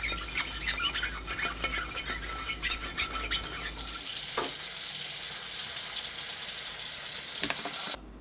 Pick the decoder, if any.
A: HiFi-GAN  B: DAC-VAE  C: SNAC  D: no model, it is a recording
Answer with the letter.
D